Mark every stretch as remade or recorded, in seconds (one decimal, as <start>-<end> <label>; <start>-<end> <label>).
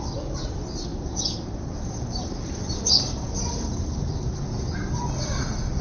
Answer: 0.0-5.8 recorded